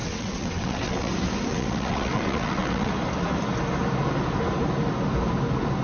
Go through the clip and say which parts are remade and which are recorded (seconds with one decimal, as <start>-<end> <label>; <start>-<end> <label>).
0.0-1.1 remade; 1.1-1.5 recorded; 1.5-2.9 remade; 2.9-5.8 recorded